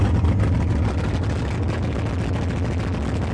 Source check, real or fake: real